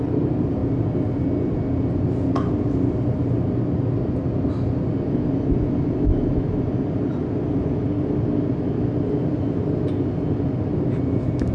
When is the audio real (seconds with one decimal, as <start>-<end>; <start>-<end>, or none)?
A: 0.0-11.5